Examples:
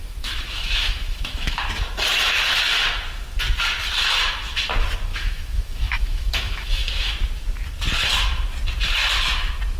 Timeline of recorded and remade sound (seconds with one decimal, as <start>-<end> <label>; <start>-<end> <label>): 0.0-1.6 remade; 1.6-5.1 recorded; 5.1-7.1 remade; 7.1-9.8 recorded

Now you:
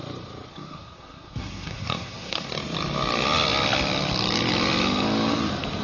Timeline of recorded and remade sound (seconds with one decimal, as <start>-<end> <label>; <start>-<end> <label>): 0.0-0.5 recorded; 0.5-2.5 remade; 2.5-5.8 recorded

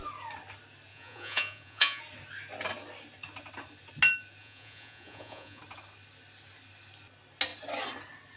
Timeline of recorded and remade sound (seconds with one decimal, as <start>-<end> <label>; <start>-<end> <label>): 0.0-0.9 recorded; 0.9-2.0 remade; 2.0-4.4 recorded; 4.4-5.6 remade; 5.6-8.4 recorded

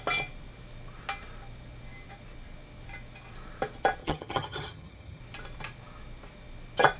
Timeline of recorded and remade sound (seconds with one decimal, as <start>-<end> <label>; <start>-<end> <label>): 0.0-4.0 recorded; 4.0-5.2 remade; 5.2-7.0 recorded

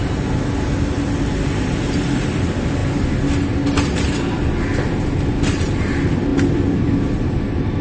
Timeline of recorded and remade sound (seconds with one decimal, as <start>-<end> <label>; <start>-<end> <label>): 0.0-7.8 recorded

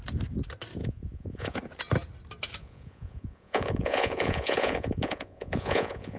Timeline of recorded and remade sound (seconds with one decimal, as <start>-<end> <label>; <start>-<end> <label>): 0.0-0.8 recorded; 0.8-1.6 remade; 1.6-2.6 recorded; 2.6-6.2 remade